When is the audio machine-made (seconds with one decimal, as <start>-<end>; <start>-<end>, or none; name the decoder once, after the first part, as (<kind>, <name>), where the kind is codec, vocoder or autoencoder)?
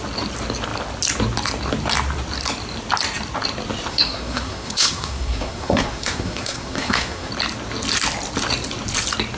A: 3.9-7.3 (codec, SNAC)